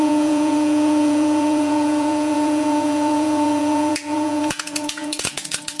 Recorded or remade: remade